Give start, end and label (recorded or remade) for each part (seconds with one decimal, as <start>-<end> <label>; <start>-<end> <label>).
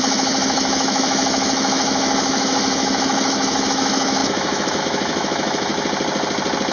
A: 0.0-5.7 remade; 5.7-6.7 recorded